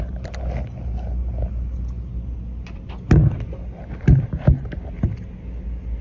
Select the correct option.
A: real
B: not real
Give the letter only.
A